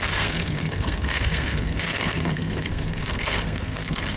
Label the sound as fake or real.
fake